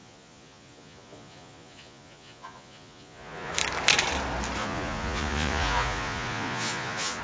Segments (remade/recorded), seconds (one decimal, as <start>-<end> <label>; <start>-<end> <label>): 0.0-3.5 remade; 3.5-4.6 recorded; 4.6-7.2 remade

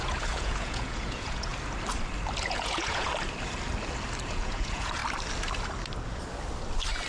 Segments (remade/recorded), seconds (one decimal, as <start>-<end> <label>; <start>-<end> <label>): 0.0-1.5 remade; 1.5-2.4 recorded; 2.4-3.1 remade; 3.1-4.3 recorded; 4.3-5.0 remade; 5.0-7.1 recorded

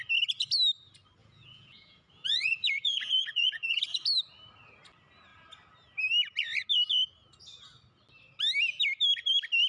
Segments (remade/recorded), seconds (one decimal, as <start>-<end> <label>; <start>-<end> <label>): 0.0-1.2 recorded; 1.2-3.8 remade; 3.8-9.7 recorded

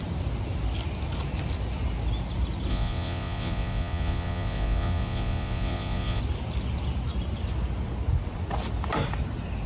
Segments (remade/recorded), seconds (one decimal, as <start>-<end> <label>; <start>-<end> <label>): 0.0-2.7 recorded; 2.7-6.2 remade; 6.2-9.7 recorded

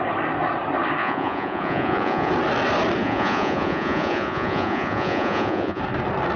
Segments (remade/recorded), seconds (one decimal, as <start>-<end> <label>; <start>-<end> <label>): 0.0-1.0 recorded; 1.0-2.3 remade; 2.3-3.0 recorded; 3.0-5.8 remade; 5.8-6.4 recorded

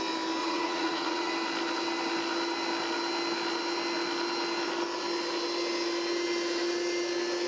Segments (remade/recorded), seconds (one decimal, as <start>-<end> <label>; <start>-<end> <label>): 0.0-0.4 recorded; 0.4-1.3 remade; 1.3-7.5 recorded

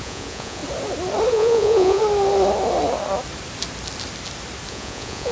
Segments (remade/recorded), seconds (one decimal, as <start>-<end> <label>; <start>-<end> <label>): 0.0-0.6 remade; 0.6-1.3 recorded; 1.3-2.0 remade; 2.0-4.7 recorded; 4.7-5.3 remade